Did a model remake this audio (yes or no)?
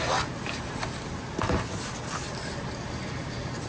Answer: no